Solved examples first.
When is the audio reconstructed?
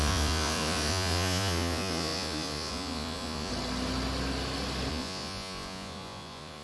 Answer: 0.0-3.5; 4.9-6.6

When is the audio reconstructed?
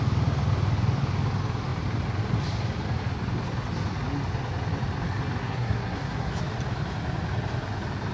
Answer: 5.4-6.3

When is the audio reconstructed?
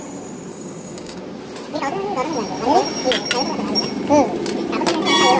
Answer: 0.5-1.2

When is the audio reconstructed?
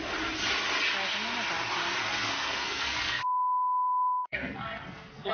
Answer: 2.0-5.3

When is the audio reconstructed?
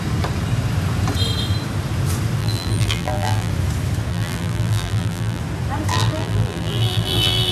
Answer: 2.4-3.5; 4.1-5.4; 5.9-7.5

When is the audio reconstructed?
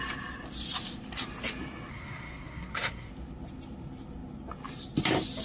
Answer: 1.9-3.1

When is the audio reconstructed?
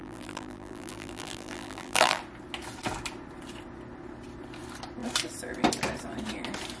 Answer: 0.0-2.2